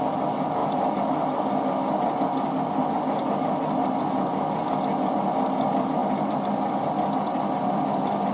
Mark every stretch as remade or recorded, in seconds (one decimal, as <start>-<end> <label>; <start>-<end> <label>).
0.0-8.3 recorded

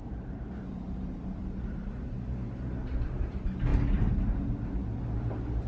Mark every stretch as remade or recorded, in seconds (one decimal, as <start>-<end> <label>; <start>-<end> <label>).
0.0-5.7 recorded

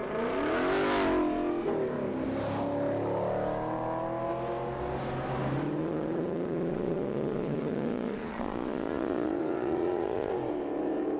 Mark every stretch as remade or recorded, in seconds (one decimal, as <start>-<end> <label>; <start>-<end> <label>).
0.0-5.8 recorded; 5.8-10.3 remade; 10.3-11.2 recorded